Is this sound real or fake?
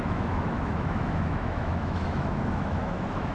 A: fake